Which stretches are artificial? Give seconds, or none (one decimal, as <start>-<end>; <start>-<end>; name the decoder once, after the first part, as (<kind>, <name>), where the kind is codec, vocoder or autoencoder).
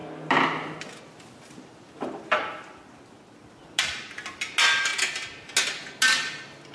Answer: none